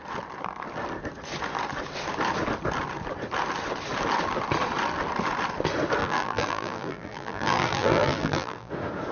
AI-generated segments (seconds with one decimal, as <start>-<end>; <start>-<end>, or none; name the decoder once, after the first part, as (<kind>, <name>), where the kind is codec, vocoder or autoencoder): 6.0-8.7 (vocoder, BigVGAN v2)